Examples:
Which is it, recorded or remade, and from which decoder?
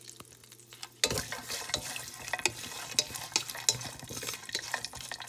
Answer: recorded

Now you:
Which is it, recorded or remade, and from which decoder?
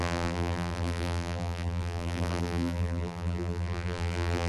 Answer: remade, vocoder, BigVGAN v2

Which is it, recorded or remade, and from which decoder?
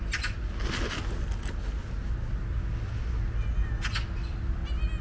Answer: recorded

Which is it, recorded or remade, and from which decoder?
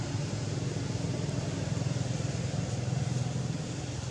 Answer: recorded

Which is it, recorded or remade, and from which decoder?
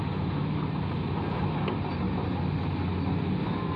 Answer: recorded